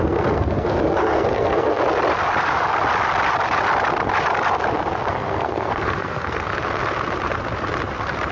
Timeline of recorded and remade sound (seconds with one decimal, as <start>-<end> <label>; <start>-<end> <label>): 0.0-1.8 remade; 1.8-5.1 recorded; 5.1-6.5 remade; 6.5-8.3 recorded